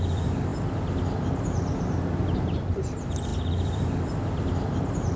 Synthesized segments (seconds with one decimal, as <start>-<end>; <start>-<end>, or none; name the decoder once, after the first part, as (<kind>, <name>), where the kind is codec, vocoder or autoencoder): 0.0-0.5 (vocoder, BigVGAN v2); 2.4-5.2